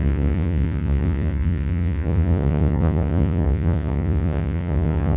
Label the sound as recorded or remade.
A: remade